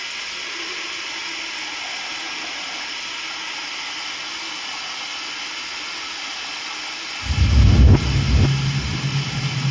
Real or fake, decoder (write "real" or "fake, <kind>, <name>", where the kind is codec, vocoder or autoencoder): real